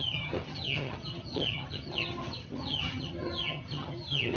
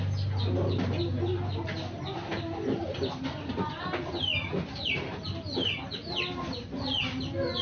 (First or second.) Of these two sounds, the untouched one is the second